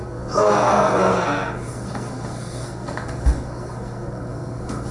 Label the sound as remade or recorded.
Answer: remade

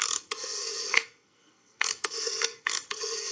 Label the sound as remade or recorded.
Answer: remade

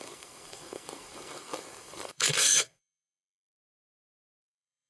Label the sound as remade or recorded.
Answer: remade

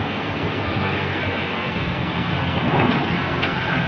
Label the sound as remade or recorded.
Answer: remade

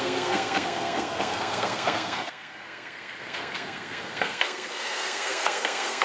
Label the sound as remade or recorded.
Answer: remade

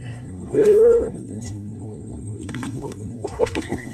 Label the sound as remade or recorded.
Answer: remade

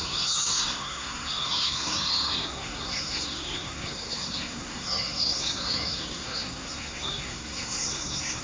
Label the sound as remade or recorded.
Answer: remade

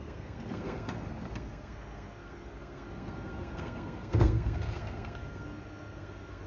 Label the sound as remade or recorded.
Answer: remade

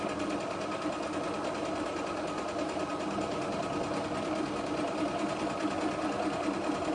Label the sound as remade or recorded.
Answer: recorded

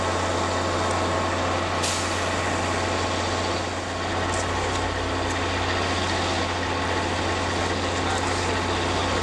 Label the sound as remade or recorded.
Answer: recorded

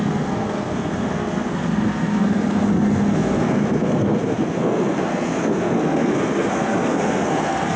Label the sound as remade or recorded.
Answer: remade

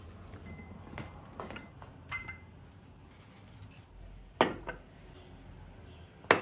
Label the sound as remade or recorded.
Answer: recorded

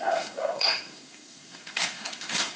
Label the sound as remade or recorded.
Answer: remade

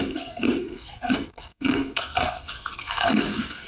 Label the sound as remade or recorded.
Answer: remade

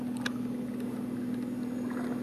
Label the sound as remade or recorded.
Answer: recorded